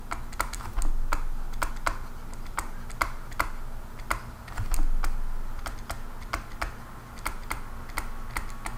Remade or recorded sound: recorded